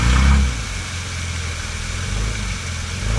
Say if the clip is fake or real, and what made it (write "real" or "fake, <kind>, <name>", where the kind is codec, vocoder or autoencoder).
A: real